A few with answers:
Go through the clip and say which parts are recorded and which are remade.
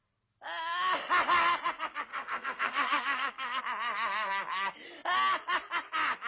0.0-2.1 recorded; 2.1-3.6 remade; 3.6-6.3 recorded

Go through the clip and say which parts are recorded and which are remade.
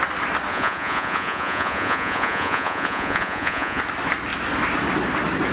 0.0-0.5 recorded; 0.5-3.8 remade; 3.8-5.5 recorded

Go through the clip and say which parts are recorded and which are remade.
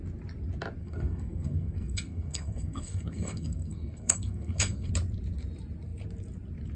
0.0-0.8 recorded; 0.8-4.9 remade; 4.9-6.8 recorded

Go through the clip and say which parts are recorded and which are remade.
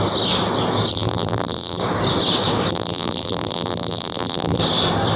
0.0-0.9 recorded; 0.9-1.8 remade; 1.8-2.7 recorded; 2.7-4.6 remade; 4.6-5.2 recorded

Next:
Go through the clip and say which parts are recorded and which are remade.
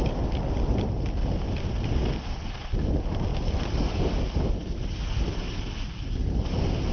0.0-6.9 recorded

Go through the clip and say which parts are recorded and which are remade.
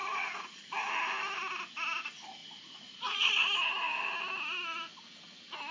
0.0-0.7 remade; 0.7-2.4 recorded; 2.4-3.3 remade; 3.3-5.7 recorded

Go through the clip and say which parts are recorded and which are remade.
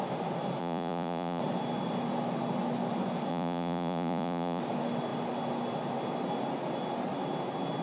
0.0-0.6 recorded; 0.6-1.4 remade; 1.4-3.3 recorded; 3.3-4.6 remade; 4.6-7.8 recorded